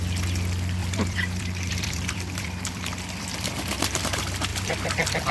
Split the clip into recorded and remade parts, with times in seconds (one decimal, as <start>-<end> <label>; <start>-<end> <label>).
0.0-0.8 recorded; 0.8-4.0 remade; 4.0-4.5 recorded; 4.5-5.3 remade

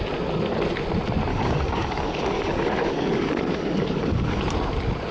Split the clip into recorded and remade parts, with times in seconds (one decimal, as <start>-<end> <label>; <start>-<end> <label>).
0.0-1.3 recorded; 1.3-4.4 remade; 4.4-5.1 recorded

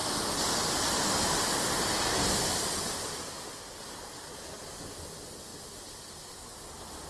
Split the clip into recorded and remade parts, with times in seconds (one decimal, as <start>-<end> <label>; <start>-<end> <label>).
0.0-7.1 recorded

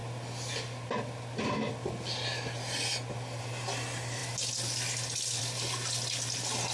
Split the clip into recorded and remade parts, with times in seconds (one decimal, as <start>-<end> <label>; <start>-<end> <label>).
0.0-6.7 recorded

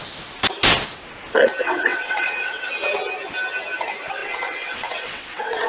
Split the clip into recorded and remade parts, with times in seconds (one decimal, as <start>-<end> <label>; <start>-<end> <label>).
0.0-1.6 recorded; 1.6-2.7 remade; 2.7-4.2 recorded; 4.2-5.7 remade

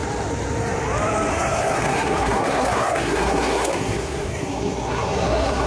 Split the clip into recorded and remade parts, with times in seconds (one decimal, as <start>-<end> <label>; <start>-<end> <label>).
0.0-1.3 recorded; 1.3-5.7 remade

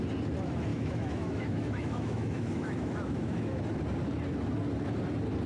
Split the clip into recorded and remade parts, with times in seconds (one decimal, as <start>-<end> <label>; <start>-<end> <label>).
0.0-0.7 recorded; 0.7-3.6 remade; 3.6-5.5 recorded